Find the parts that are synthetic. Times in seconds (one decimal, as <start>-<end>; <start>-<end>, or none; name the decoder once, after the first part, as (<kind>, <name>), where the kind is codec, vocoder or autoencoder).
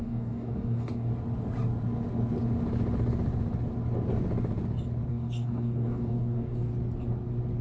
0.0-1.1 (codec, DAC); 5.1-6.7